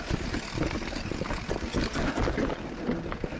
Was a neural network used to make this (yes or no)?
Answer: no